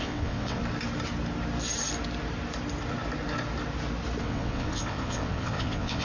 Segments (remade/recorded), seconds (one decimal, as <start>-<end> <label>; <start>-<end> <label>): 0.0-0.6 remade; 0.6-4.2 recorded; 4.2-6.0 remade